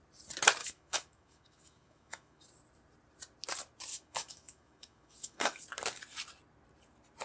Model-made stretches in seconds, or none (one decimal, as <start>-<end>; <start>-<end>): 0.6-2.4; 3.9-5.6